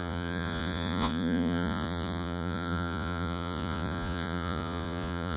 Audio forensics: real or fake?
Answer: fake